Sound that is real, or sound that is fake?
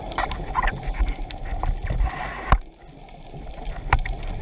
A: real